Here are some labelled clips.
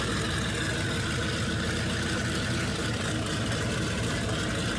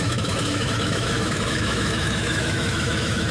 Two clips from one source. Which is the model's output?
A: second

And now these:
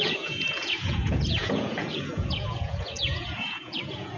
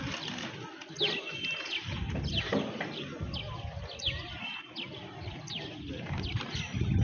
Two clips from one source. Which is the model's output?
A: first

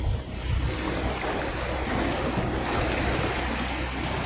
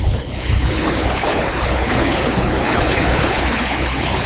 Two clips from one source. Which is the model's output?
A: second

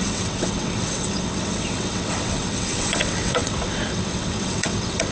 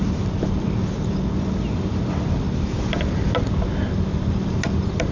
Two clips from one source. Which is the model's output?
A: first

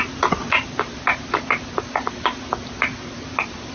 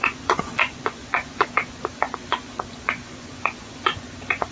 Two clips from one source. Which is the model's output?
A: second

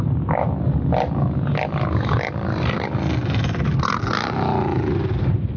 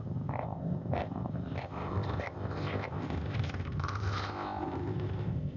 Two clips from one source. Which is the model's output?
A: second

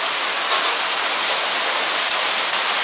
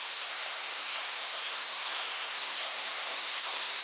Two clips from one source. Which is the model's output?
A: second